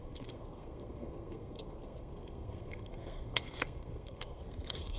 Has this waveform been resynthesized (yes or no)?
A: yes